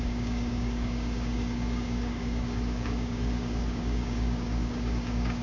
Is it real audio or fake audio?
fake